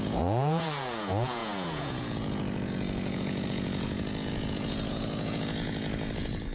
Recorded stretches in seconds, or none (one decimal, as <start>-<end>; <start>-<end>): none